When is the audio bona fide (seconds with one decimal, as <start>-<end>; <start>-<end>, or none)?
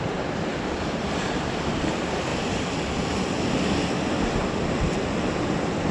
0.0-0.5; 1.2-5.9